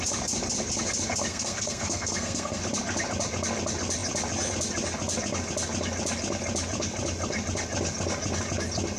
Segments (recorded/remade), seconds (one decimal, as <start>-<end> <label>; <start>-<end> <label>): 0.0-1.3 recorded; 1.3-2.6 remade; 2.6-9.0 recorded